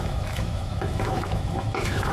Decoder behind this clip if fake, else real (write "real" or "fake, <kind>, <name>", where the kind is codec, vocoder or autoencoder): fake, autoencoder, DAC-VAE